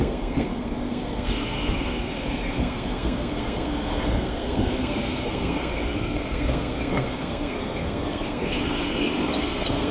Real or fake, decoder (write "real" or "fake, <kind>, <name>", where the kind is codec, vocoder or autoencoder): fake, codec, SNAC